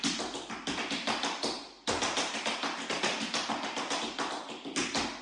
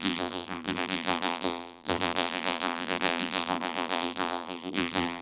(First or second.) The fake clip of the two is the second